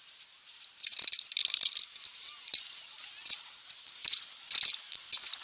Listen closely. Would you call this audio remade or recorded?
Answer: recorded